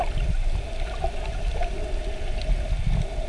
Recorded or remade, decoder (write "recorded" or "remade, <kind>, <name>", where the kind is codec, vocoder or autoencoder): recorded